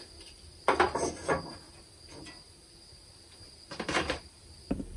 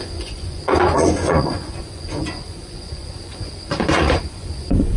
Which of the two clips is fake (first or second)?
second